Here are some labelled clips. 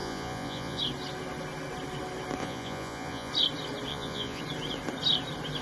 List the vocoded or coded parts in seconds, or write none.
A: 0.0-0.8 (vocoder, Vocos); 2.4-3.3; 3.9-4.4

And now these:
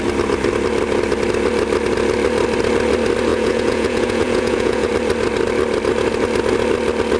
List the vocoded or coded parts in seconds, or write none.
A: 3.3-4.9 (vocoder, Vocos)

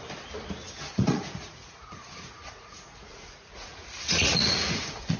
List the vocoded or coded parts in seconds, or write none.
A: 0.9-5.2 (vocoder, Vocos)